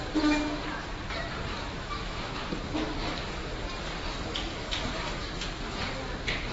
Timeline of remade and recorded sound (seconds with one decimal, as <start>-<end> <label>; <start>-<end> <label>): 0.0-1.5 recorded; 1.5-2.5 remade; 2.5-3.0 recorded; 3.0-3.5 remade; 3.5-4.5 recorded; 4.5-5.3 remade; 5.3-6.5 recorded